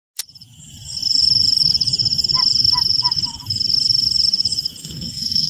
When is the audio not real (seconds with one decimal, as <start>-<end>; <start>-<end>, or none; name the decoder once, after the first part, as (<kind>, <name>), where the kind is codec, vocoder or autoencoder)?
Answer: 4.8-5.5 (codec, SNAC)